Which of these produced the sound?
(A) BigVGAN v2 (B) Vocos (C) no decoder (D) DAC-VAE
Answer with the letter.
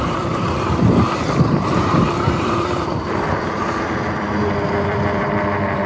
A